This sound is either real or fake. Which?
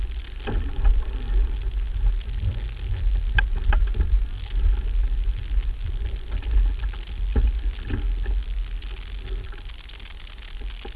real